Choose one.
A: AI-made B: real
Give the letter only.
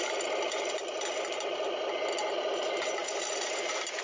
B